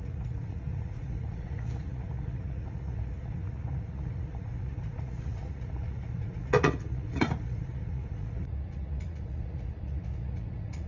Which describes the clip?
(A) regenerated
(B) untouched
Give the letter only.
A